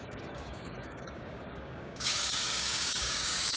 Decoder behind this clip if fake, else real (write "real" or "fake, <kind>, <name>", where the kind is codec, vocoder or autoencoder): fake, codec, DAC